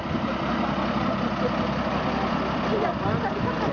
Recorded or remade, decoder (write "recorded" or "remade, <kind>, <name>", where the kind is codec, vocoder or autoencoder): recorded